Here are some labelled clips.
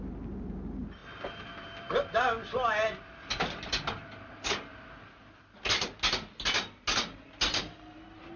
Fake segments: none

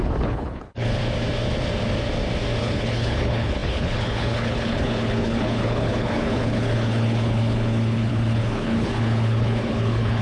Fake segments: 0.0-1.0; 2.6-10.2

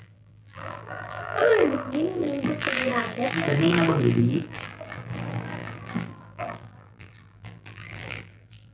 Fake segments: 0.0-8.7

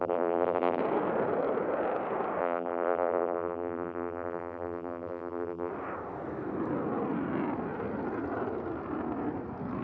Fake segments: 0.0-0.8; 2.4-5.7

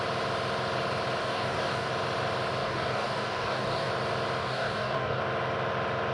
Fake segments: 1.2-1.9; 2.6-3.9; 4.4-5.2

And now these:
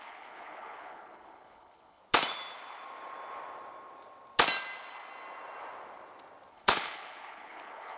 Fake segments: 0.0-2.0; 6.5-8.0

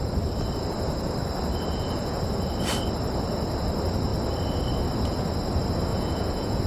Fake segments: 1.7-2.2; 5.9-6.7